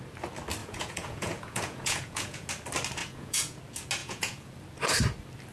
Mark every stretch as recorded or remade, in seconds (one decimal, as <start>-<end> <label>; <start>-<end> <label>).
0.0-0.6 recorded; 0.6-2.5 remade; 2.5-3.0 recorded; 3.0-3.6 remade; 3.6-4.0 recorded; 4.0-4.5 remade; 4.5-5.5 recorded